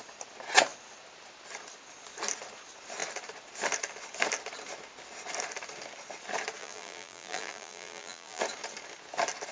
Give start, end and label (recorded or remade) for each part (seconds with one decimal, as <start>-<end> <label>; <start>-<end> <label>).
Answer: 0.0-6.6 recorded; 6.6-8.4 remade; 8.4-9.5 recorded